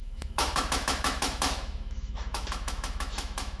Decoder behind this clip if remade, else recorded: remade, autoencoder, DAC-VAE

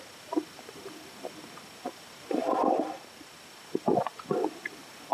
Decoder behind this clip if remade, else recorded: recorded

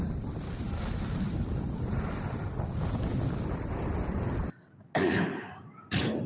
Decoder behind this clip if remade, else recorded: recorded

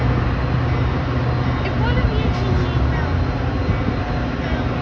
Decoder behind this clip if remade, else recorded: recorded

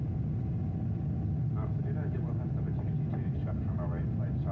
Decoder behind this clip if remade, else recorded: recorded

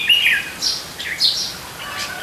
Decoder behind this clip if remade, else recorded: recorded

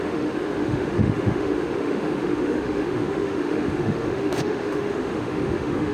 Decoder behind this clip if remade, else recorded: remade, autoencoder, DAC-VAE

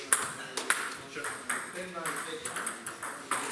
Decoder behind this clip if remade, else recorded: recorded